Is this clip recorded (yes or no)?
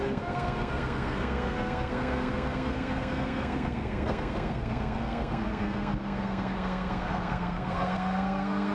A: no